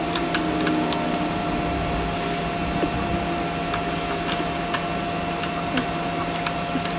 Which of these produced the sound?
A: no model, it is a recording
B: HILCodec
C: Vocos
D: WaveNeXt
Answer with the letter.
A